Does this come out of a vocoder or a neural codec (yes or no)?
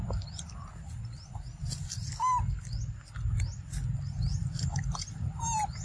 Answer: no